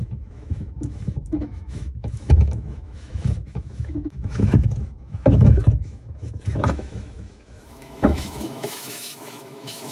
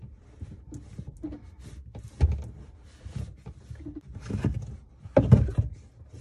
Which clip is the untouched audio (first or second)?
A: second